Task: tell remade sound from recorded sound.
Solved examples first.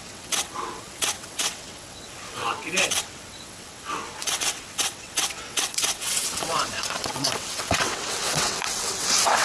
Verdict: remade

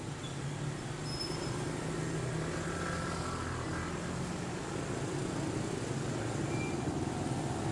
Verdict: recorded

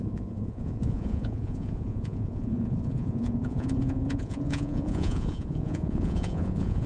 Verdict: remade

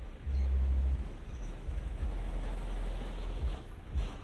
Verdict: remade